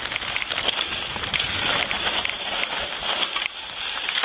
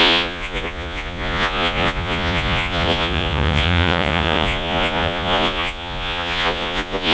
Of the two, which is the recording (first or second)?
first